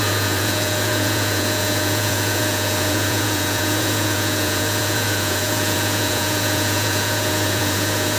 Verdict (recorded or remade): remade